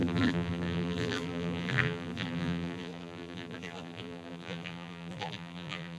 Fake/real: fake